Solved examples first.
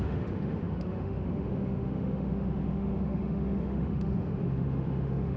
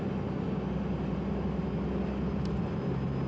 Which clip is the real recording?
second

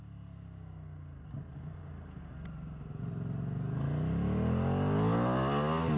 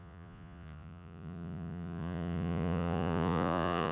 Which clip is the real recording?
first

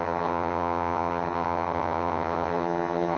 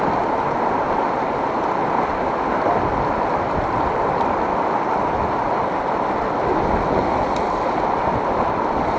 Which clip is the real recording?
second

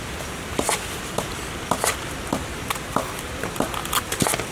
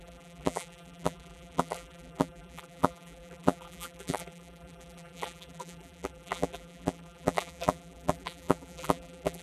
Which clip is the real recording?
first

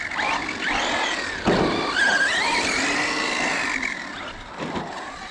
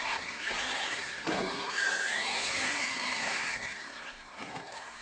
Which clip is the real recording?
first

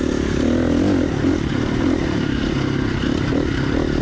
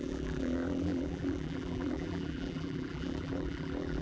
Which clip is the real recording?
first